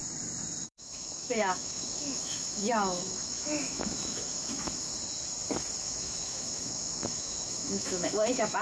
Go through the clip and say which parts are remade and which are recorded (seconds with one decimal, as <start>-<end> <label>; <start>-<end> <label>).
0.0-0.6 recorded; 0.6-4.9 remade; 4.9-5.8 recorded; 5.8-8.6 remade